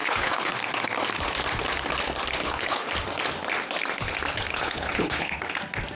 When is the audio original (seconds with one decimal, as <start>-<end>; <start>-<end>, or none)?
0.5-2.4; 2.9-4.5; 5.4-5.9